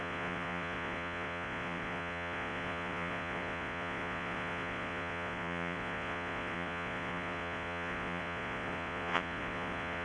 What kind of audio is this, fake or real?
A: fake